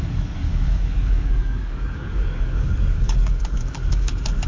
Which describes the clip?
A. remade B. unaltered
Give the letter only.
A